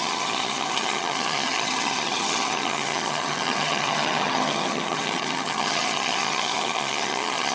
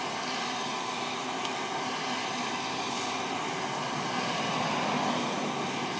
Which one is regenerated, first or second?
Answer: first